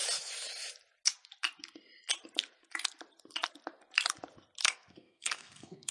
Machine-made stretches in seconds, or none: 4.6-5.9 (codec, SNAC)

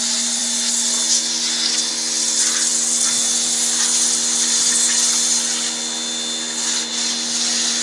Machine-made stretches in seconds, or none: none